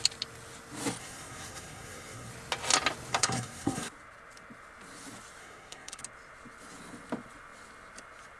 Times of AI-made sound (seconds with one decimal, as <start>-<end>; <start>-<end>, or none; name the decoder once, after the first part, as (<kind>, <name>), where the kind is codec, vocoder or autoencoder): 1.0-2.3 (codec, SNAC); 3.1-3.9; 5.4-6.0